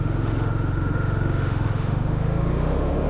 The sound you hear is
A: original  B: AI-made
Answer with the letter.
B